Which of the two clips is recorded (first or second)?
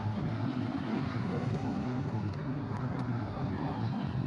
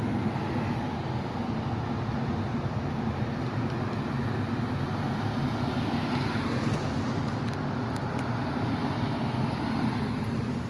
second